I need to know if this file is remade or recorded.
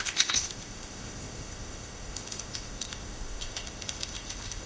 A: remade